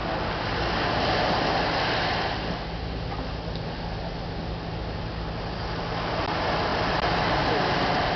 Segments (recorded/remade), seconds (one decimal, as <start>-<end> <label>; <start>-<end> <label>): 0.0-8.2 recorded